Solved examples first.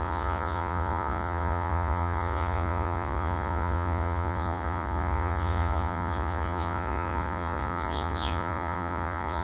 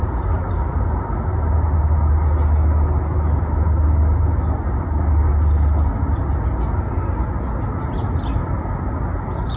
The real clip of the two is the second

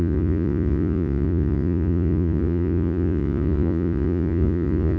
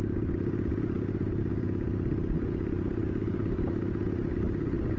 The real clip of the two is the second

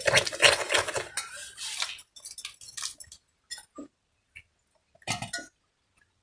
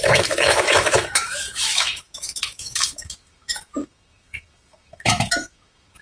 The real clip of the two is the first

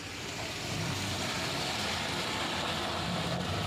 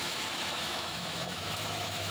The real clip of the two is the first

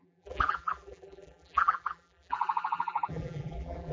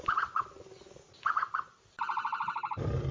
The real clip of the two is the second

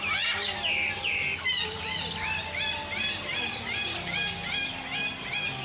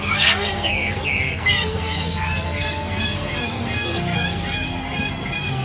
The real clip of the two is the first